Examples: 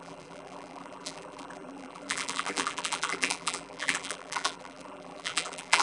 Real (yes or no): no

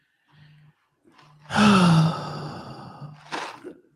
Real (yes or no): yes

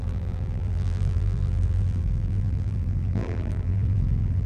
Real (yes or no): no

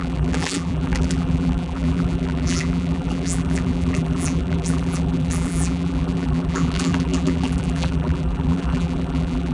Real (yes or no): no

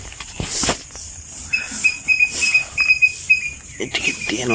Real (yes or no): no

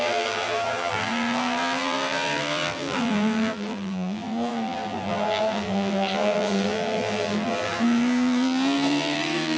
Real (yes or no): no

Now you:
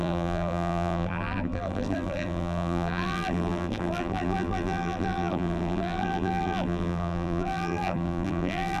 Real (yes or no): no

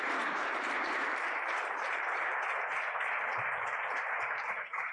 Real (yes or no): no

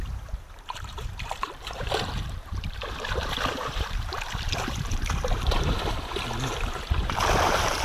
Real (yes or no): no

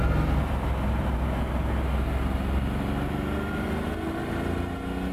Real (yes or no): yes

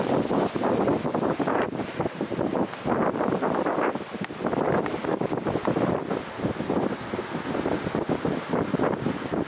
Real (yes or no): yes